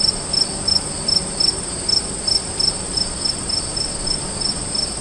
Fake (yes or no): no